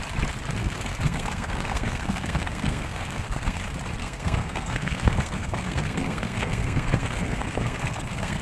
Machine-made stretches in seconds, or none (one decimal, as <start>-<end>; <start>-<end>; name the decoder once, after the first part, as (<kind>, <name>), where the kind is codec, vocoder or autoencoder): 0.6-3.6 (codec, SNAC); 4.0-8.4